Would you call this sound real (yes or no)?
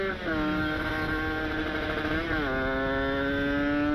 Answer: yes